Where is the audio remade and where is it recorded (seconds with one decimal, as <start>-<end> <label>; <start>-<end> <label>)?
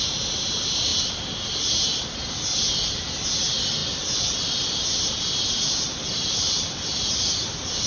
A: 0.0-0.9 recorded; 0.9-1.7 remade; 1.7-3.8 recorded; 3.8-7.1 remade; 7.1-7.9 recorded